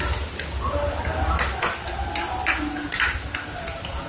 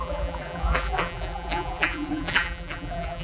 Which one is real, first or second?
first